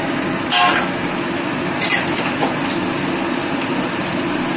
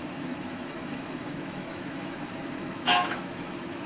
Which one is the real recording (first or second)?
first